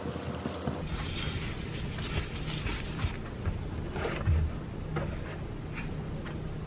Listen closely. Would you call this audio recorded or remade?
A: recorded